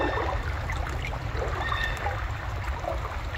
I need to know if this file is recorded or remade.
recorded